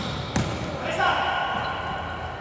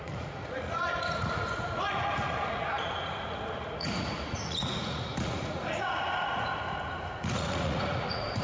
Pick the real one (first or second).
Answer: first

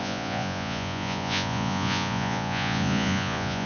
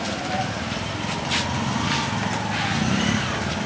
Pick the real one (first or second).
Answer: second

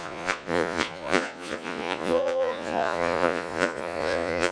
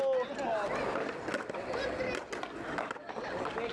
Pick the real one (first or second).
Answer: second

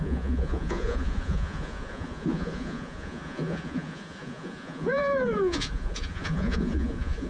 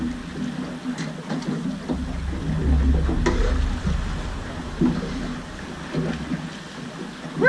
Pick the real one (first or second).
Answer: second